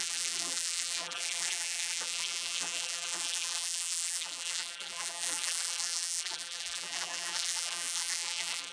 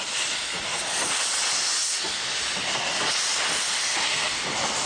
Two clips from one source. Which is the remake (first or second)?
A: first